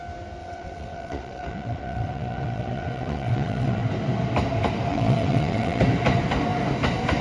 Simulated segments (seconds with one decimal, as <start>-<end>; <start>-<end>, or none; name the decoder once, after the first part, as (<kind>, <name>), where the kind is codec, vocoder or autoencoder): 0.4-3.8 (vocoder, WaveNeXt); 4.9-5.8